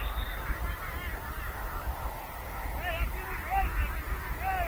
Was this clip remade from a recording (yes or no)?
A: no